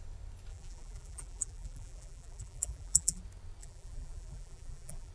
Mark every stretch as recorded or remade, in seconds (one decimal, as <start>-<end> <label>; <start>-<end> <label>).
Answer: 0.0-0.5 recorded; 0.5-3.2 remade; 3.2-3.6 recorded; 3.6-5.1 remade

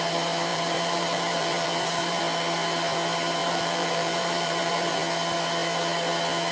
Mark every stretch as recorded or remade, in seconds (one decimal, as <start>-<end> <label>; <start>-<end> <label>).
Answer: 0.0-0.5 recorded; 0.5-2.2 remade; 2.2-3.4 recorded; 3.4-4.9 remade; 4.9-6.5 recorded

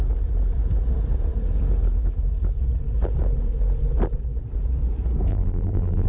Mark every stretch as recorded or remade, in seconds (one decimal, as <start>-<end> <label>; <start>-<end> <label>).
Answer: 0.0-5.3 recorded; 5.3-6.1 remade

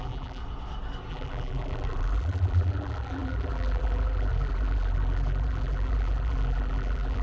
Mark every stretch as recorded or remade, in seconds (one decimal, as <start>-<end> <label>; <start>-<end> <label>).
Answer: 0.0-0.4 remade; 0.4-1.1 recorded; 1.1-7.2 remade

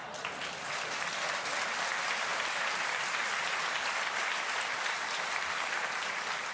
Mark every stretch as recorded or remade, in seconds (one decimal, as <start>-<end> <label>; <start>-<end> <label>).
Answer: 0.0-4.3 recorded; 4.3-6.5 remade

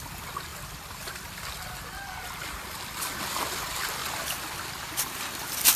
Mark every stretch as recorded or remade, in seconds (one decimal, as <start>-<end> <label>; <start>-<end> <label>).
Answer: 0.0-5.8 recorded

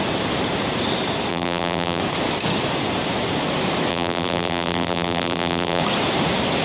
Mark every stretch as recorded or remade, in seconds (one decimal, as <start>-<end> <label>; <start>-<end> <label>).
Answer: 0.0-1.3 recorded; 1.3-2.0 remade; 2.0-3.9 recorded; 3.9-5.8 remade; 5.8-6.6 recorded